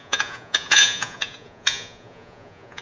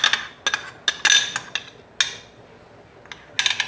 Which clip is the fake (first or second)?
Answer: first